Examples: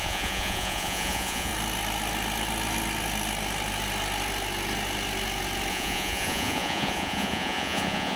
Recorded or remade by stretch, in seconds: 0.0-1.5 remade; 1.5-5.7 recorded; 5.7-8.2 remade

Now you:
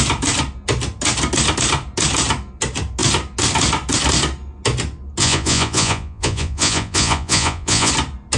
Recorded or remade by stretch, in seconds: 0.0-5.2 recorded; 5.2-7.9 remade; 7.9-8.4 recorded

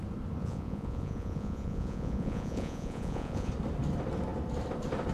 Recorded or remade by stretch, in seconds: 0.0-0.4 recorded; 0.4-3.5 remade; 3.5-5.1 recorded

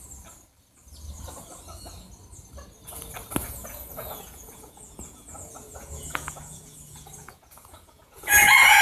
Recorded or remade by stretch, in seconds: 0.0-3.4 recorded; 3.4-8.8 remade

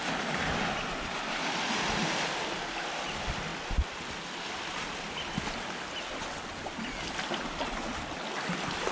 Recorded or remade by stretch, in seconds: 0.0-8.9 recorded

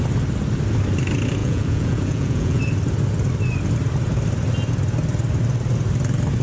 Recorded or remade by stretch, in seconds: 0.0-1.4 recorded; 1.4-2.6 remade; 2.6-6.4 recorded